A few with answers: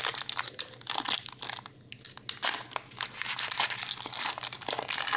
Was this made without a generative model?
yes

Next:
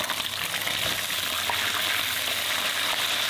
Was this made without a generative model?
yes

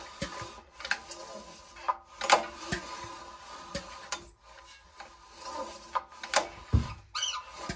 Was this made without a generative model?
yes